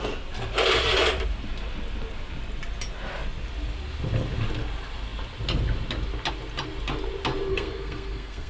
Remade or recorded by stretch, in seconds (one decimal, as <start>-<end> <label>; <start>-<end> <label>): 0.0-7.5 recorded; 7.5-8.5 remade